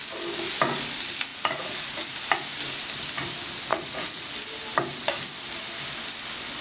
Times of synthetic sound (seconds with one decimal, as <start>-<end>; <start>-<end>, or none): 1.3-2.2; 3.7-4.3